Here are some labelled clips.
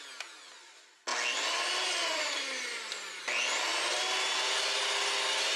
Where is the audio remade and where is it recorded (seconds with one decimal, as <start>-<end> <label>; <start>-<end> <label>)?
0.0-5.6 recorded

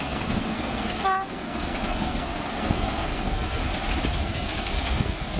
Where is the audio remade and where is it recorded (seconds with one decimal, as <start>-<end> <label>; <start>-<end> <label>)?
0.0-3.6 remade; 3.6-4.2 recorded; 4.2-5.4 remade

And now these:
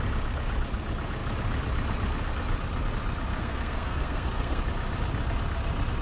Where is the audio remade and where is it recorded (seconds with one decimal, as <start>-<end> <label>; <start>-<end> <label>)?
0.0-3.3 recorded; 3.3-4.6 remade; 4.6-6.0 recorded

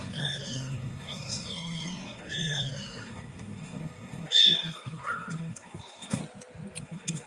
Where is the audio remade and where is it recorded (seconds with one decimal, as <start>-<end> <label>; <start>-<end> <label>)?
0.0-6.2 remade; 6.2-6.8 recorded; 6.8-7.3 remade

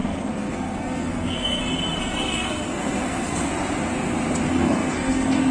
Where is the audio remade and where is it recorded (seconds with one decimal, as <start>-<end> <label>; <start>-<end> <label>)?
0.0-1.6 remade; 1.6-2.0 recorded; 2.0-3.5 remade; 3.5-4.5 recorded; 4.5-5.5 remade

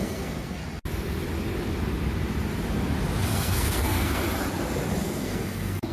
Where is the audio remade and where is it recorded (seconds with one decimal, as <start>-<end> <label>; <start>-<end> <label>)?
0.0-0.6 remade; 0.6-3.2 recorded; 3.2-4.2 remade; 4.2-5.0 recorded; 5.0-5.9 remade

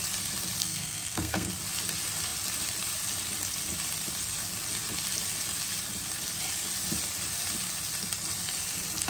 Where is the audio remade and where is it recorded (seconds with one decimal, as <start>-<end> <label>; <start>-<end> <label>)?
0.0-0.6 recorded; 0.6-1.5 remade; 1.5-9.1 recorded